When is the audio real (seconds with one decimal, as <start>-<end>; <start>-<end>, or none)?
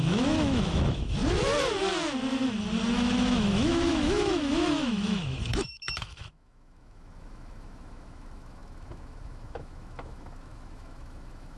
1.2-2.9